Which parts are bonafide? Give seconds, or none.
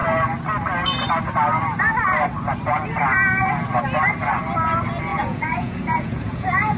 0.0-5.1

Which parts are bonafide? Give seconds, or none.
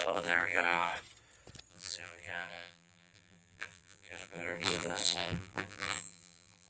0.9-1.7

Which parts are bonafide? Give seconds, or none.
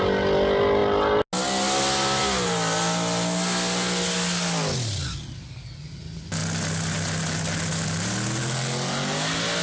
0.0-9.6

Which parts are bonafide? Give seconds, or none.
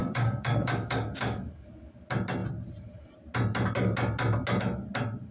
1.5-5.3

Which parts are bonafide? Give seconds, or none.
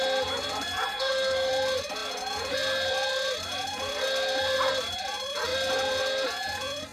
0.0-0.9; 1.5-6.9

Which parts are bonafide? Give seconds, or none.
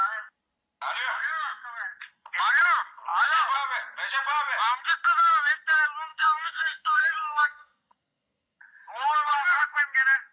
0.0-6.1; 8.6-10.3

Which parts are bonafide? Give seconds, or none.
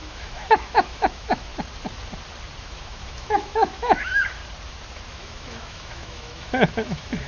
1.5-2.6; 4.4-5.1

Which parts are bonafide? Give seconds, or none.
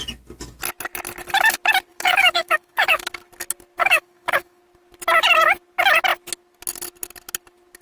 0.0-1.9; 3.1-3.8; 4.6-7.8